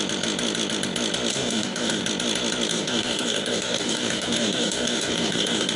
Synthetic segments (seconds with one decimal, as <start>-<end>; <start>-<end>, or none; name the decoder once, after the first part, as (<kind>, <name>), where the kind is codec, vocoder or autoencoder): 1.3-2.0 (codec, DAC); 2.7-5.8